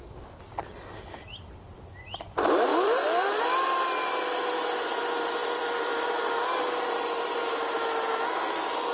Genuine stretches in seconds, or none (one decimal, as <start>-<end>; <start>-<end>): 0.0-2.7; 3.4-5.4; 7.2-8.9